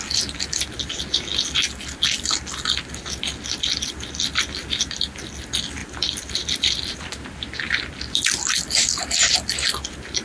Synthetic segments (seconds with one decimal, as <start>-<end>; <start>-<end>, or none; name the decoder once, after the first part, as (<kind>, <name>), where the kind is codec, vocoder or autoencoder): 5.8-7.9 (vocoder, BigVGAN v2)